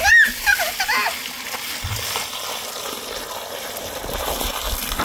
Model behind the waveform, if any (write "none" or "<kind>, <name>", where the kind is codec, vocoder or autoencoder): none